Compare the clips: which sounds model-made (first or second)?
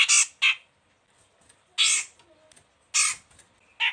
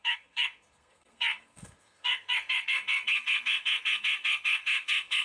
second